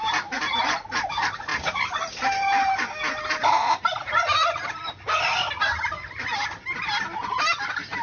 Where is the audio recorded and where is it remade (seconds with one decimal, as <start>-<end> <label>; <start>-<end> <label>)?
0.0-1.5 recorded; 1.5-6.2 remade; 6.2-8.0 recorded